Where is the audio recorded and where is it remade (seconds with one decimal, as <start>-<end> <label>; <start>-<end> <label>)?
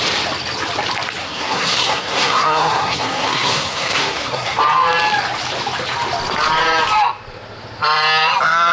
0.0-1.2 recorded; 1.2-4.6 remade; 4.6-8.7 recorded